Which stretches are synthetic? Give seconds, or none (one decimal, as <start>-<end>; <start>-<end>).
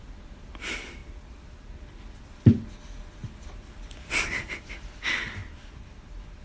1.0-2.0; 3.2-4.5; 5.4-6.4